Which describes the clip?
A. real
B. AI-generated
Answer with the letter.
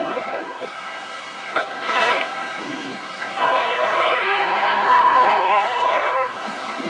B